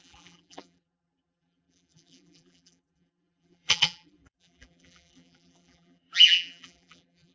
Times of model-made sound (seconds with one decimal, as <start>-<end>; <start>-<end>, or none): 0.0-7.3